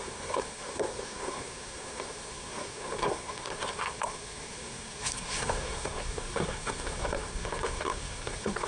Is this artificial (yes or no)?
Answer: yes